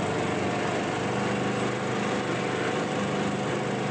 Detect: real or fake real